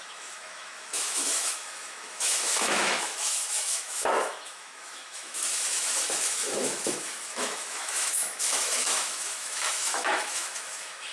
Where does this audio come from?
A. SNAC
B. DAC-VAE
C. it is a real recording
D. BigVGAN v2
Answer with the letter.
B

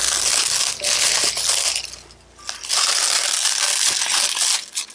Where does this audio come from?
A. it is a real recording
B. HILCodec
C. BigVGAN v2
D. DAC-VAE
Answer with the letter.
A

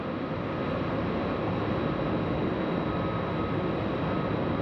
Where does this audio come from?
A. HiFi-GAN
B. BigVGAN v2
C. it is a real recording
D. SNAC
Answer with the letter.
C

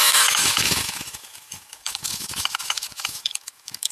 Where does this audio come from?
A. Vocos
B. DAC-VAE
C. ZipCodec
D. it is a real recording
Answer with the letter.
B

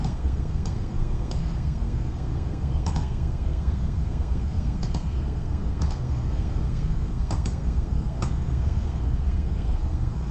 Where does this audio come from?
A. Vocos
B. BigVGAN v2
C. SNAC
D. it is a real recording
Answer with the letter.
C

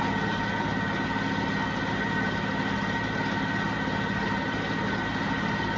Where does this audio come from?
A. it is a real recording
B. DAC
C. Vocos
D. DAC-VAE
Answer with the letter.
A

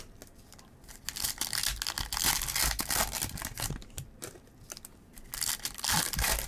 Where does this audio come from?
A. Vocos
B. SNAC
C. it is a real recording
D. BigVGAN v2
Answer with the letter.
C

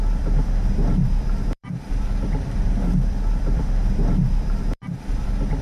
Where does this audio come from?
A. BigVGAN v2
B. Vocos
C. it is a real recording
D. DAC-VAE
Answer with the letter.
A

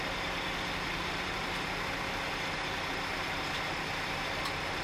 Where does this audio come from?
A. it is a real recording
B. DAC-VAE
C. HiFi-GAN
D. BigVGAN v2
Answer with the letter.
A